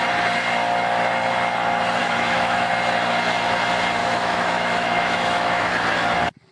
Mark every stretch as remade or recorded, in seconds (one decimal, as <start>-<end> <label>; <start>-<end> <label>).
0.0-2.0 recorded; 2.0-2.7 remade; 2.7-4.0 recorded; 4.0-5.7 remade; 5.7-6.5 recorded